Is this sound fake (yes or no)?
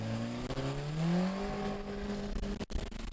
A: no